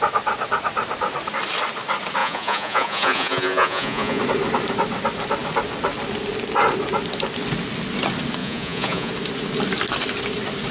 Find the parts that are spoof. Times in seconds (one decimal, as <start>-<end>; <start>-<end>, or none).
2.2-4.2; 8.4-9.1